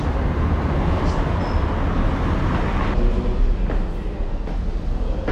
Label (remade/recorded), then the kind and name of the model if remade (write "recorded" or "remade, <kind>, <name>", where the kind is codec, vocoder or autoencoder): recorded